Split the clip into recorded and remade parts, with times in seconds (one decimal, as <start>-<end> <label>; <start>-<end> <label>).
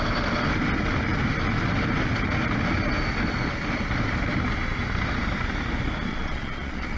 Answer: 0.0-6.1 recorded; 6.1-7.0 remade